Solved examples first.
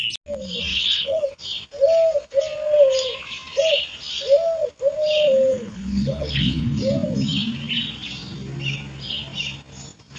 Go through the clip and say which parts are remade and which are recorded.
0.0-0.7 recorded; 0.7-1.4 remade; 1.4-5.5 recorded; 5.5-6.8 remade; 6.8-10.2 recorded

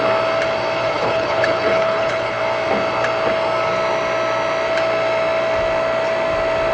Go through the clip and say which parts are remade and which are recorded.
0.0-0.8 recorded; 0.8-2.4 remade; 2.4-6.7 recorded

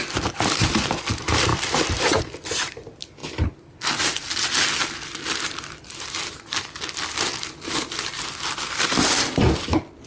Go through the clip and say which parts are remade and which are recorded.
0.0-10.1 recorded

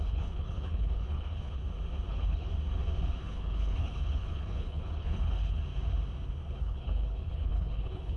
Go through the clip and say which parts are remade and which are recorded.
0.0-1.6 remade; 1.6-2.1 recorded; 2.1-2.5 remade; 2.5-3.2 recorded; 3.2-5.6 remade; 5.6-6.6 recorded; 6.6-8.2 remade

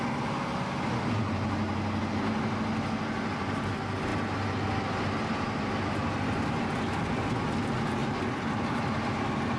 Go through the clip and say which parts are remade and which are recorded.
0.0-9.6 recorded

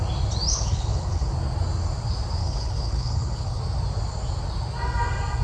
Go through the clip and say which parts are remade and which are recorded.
0.0-0.5 recorded; 0.5-1.3 remade; 1.3-2.4 recorded; 2.4-3.6 remade; 3.6-5.4 recorded

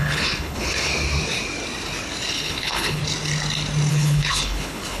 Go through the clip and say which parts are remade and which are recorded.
0.0-0.9 remade; 0.9-2.3 recorded; 2.3-3.0 remade; 3.0-3.9 recorded; 3.9-5.0 remade

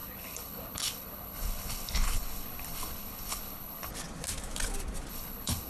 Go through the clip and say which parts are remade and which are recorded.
0.0-3.9 remade; 3.9-5.1 recorded; 5.1-5.7 remade